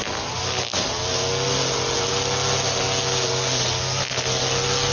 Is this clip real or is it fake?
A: real